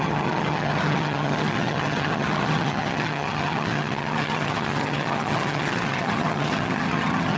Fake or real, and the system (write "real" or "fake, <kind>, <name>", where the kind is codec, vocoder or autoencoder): fake, vocoder, HiFi-GAN